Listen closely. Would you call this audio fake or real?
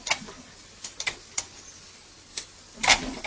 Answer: real